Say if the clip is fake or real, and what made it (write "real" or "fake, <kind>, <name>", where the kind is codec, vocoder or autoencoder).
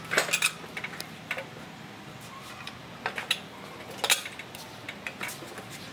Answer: real